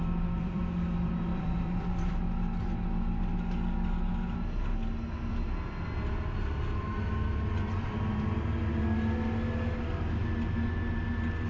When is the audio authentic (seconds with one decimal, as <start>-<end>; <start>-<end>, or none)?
0.6-1.3; 2.1-11.5